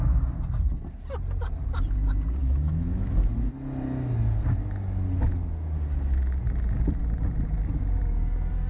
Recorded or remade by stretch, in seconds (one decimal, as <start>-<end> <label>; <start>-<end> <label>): 0.0-2.4 recorded; 2.4-3.0 remade; 3.0-8.7 recorded